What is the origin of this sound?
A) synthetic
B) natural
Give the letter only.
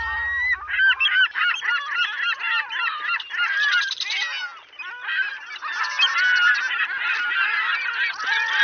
B